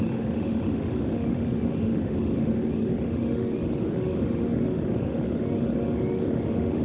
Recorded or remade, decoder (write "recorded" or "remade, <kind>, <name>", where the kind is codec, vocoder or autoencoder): remade, autoencoder, DAC-VAE